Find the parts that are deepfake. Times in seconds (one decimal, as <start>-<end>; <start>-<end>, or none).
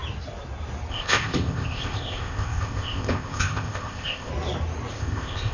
0.9-4.3; 4.9-5.5